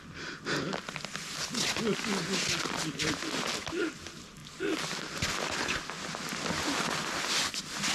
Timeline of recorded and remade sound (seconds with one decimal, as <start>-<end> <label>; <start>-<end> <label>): 0.0-7.9 recorded